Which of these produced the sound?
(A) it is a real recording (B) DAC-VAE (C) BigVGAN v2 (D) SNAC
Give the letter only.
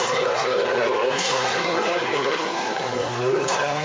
D